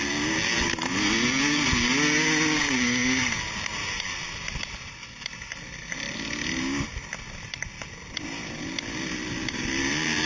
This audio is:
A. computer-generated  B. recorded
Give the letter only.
B